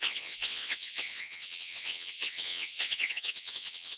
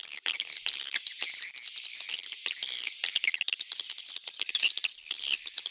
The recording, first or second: second